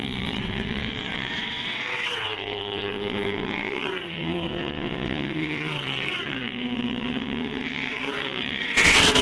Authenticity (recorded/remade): remade